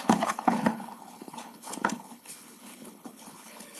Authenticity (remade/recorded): remade